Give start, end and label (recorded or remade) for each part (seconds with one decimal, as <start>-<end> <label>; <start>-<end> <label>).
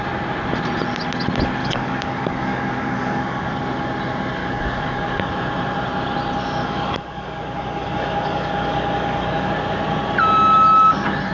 0.0-1.6 recorded; 1.6-3.5 remade; 3.5-4.4 recorded; 4.4-5.3 remade; 5.3-6.6 recorded; 6.6-9.5 remade; 9.5-11.3 recorded